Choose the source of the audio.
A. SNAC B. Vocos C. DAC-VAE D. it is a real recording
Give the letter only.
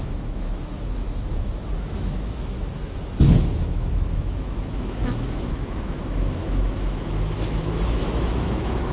C